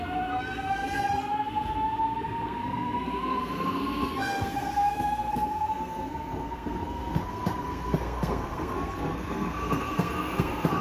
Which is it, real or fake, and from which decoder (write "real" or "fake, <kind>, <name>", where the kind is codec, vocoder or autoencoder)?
fake, codec, SNAC